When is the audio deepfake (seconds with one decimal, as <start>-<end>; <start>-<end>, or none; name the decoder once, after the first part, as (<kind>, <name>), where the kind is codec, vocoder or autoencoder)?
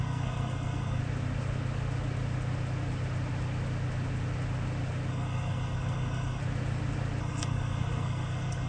0.0-1.0 (codec, SNAC); 5.1-6.4; 7.2-8.7